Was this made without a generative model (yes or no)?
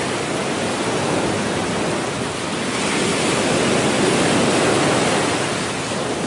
yes